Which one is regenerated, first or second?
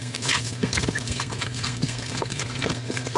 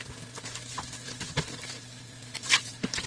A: first